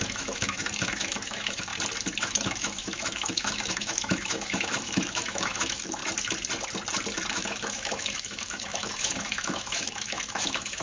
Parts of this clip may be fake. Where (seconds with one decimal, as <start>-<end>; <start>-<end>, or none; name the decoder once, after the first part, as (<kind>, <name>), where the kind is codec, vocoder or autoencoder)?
0.0-1.7 (autoencoder, DAC-VAE); 2.2-6.0; 7.3-10.8

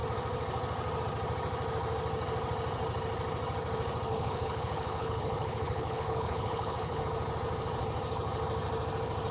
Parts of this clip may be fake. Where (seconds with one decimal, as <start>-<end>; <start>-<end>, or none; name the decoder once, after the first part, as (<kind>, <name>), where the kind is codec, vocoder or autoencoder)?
4.1-7.0 (codec, HILCodec)

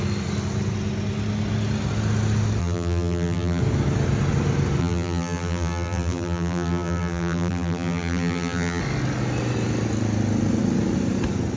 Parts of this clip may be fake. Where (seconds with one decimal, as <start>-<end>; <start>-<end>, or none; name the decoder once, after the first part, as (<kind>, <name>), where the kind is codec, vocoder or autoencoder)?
2.6-3.6 (vocoder, BigVGAN v2); 4.8-8.8

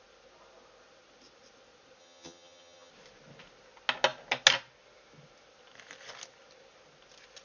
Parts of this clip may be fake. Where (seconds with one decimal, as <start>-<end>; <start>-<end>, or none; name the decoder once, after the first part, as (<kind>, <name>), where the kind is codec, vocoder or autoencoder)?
2.0-2.9 (vocoder, HiFi-GAN)

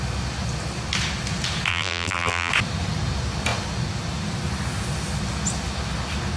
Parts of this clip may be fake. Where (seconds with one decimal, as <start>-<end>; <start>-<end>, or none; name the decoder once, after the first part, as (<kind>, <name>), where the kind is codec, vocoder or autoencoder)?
1.7-2.5 (vocoder, BigVGAN v2)

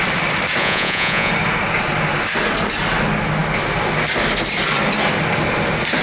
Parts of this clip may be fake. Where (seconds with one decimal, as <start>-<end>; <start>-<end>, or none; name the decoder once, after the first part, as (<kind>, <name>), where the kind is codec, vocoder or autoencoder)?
0.6-1.3 (vocoder, Vocos)